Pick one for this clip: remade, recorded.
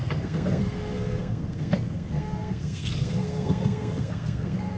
remade